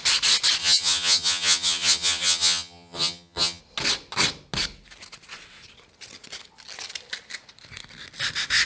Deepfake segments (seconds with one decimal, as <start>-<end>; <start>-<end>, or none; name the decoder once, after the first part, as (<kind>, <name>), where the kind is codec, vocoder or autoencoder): 0.6-3.6 (vocoder, HiFi-GAN)